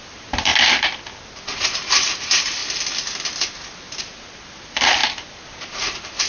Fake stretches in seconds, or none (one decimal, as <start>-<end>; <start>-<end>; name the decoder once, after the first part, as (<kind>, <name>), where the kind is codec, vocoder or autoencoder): 0.0-0.5 (vocoder, BigVGAN v2); 1.6-2.6; 4.0-6.3